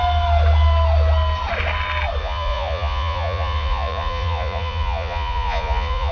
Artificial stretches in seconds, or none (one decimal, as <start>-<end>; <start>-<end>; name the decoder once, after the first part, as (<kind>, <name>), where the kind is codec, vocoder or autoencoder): 2.2-6.1 (vocoder, Vocos)